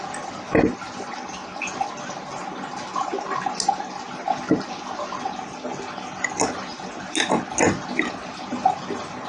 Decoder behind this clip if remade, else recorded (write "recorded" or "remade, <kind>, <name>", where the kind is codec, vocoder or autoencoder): recorded